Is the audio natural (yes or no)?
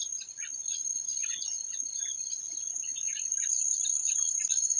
yes